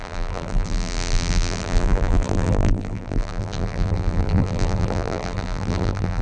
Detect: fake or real fake